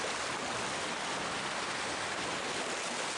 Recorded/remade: recorded